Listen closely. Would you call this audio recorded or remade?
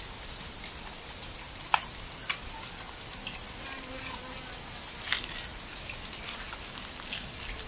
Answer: recorded